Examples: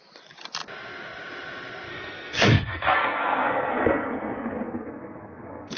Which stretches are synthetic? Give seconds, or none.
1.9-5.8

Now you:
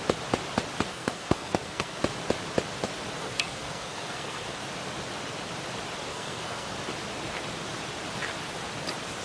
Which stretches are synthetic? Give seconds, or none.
0.9-2.0; 3.2-4.6; 6.1-6.7